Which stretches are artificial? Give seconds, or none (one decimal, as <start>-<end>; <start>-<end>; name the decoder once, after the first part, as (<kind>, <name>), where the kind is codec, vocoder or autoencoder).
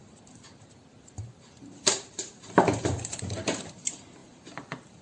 0.0-5.0 (vocoder, BigVGAN v2)